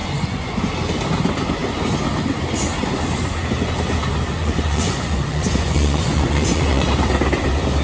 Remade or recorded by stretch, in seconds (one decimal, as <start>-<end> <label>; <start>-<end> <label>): 0.0-0.6 remade; 0.6-4.4 recorded; 4.4-6.9 remade; 6.9-7.8 recorded